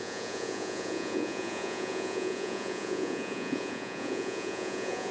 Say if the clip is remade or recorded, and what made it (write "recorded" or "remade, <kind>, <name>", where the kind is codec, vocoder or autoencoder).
remade, vocoder, Vocos